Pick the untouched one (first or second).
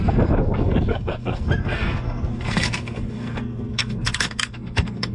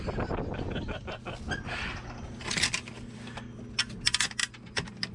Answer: second